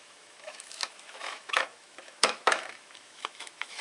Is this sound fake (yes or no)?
yes